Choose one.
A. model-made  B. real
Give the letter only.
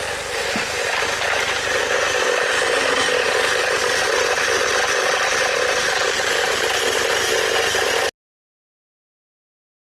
B